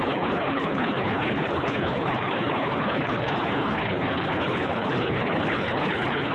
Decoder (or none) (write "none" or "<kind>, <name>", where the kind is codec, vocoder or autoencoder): codec, HILCodec